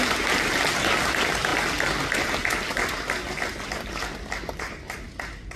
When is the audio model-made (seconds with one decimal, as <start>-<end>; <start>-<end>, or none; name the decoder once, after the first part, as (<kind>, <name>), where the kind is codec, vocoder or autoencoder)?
none